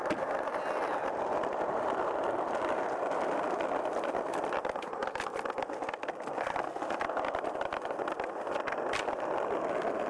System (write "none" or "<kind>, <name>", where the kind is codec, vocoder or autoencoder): none